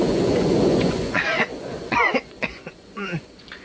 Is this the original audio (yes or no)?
no